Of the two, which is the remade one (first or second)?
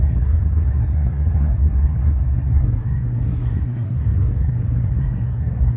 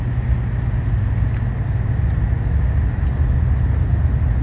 first